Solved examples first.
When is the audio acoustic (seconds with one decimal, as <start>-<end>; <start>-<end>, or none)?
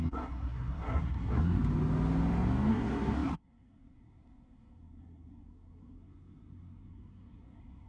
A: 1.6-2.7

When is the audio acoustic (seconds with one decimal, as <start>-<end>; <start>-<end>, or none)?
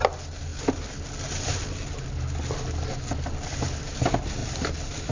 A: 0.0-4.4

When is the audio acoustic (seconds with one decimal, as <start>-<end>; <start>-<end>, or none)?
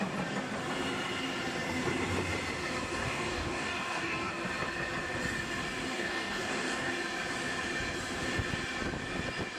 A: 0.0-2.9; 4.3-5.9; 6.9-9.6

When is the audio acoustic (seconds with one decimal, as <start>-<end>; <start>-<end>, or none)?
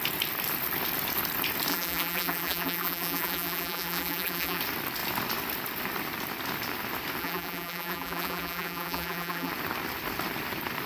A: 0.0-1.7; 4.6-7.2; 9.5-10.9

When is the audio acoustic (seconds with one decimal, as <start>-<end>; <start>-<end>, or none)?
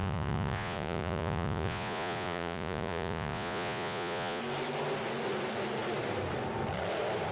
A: 4.4-7.3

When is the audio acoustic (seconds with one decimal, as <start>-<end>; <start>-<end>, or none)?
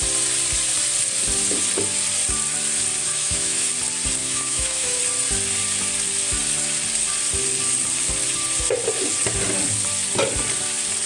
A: 0.0-3.0; 3.7-4.2; 5.0-11.1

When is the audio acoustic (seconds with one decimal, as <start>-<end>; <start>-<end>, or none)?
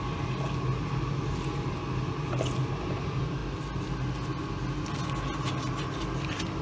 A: 0.0-6.6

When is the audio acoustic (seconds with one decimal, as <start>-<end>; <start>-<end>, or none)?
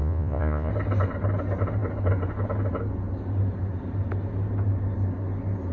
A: 0.7-5.7